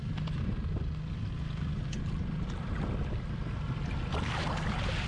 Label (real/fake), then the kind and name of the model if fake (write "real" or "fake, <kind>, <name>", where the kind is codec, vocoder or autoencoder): real